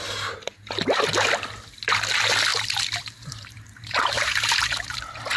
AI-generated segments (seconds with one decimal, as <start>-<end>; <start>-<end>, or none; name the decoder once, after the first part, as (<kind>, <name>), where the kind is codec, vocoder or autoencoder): 2.5-5.0 (vocoder, BigVGAN v2)